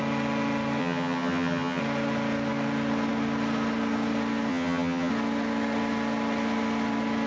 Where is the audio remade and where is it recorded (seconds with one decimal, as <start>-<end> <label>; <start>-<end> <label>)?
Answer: 0.0-0.8 recorded; 0.8-1.8 remade; 1.8-4.5 recorded; 4.5-5.1 remade; 5.1-7.3 recorded